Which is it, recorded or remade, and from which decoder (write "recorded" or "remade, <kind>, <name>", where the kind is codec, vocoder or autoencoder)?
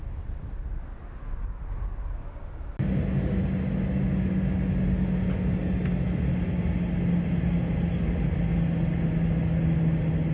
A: recorded